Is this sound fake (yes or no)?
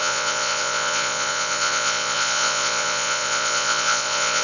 yes